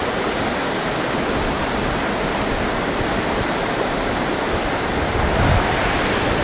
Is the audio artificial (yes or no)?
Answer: no